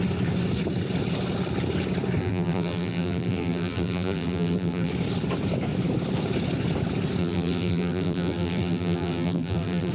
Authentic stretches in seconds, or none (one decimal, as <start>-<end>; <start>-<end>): 0.0-2.2; 4.9-7.2